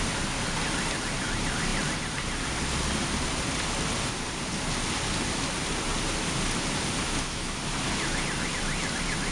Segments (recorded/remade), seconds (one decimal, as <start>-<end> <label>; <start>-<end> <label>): 0.0-7.0 recorded; 7.0-7.6 remade; 7.6-9.3 recorded